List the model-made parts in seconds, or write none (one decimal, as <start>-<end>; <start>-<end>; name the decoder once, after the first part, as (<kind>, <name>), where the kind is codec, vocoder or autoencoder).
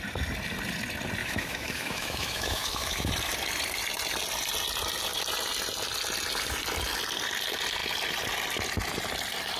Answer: 1.2-3.1 (autoencoder, DAC-VAE)